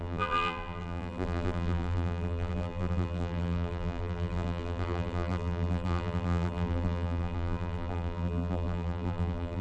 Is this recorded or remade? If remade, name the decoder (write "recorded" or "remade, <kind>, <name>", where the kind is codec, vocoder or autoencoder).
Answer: remade, vocoder, BigVGAN v2